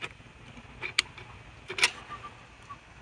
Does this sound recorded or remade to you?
recorded